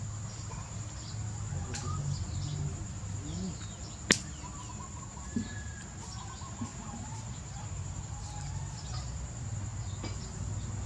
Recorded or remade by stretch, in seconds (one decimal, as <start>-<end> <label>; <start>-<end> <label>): 0.0-10.9 recorded